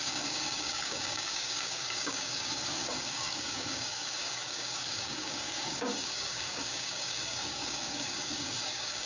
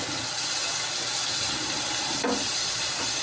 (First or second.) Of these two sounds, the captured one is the second